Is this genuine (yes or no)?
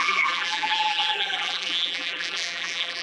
no